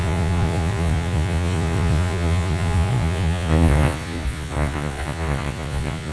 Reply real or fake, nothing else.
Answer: fake